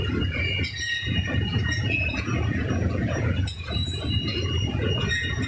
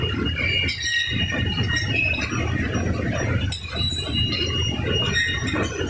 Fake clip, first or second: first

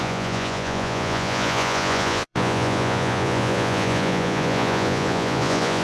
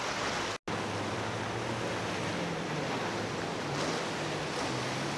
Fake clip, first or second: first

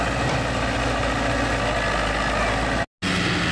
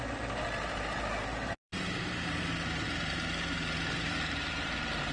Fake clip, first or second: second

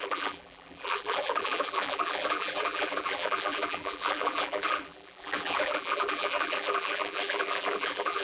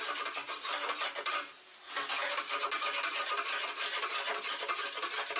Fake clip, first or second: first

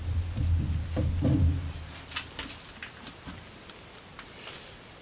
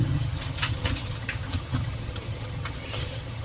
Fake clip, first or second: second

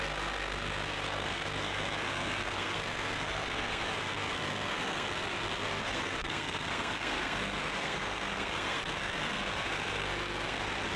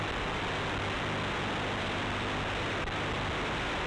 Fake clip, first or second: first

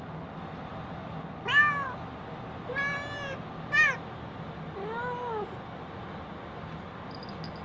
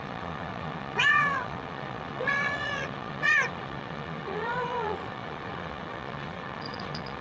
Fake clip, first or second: second